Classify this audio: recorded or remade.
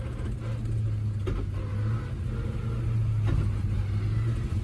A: recorded